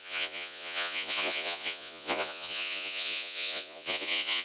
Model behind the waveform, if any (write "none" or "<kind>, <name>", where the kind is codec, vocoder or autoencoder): vocoder, Vocos